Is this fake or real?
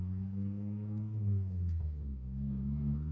fake